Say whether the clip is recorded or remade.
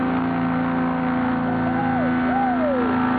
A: recorded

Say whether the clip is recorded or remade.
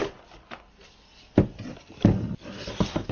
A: recorded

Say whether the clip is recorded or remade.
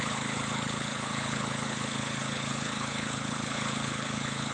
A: remade